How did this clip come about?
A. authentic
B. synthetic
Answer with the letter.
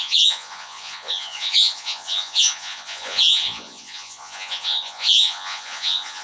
B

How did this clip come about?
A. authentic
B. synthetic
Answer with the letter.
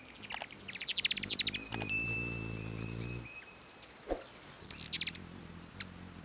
A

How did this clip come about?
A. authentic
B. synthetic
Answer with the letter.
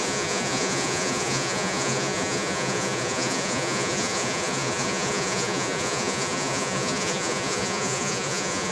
B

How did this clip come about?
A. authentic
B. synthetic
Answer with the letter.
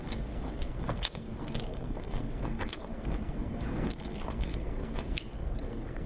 B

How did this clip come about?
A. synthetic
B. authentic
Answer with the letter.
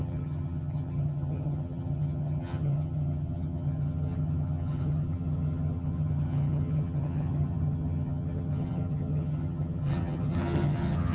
A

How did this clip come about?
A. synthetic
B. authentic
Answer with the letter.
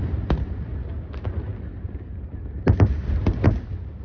B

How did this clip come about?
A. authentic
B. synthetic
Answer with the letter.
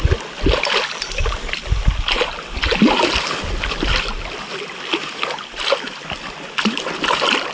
A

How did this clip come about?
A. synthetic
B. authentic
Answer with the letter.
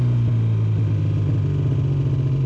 B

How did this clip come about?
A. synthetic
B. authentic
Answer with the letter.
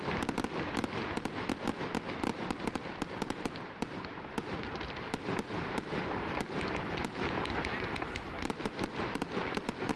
B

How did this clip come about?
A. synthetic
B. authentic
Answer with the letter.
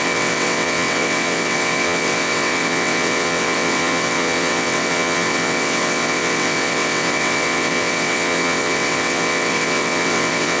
A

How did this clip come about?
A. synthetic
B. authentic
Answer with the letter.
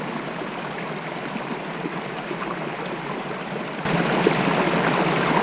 B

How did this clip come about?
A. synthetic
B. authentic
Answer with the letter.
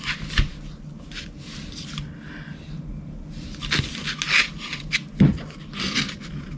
B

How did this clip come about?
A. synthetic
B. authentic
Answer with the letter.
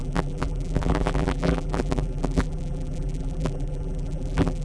A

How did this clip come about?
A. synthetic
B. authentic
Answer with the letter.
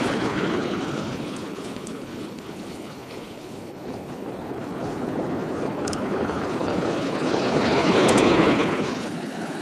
A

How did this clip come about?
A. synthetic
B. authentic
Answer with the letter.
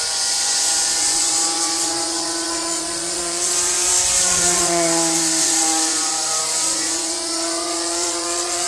A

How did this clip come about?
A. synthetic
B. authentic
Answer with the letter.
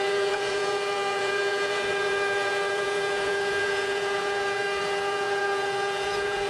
A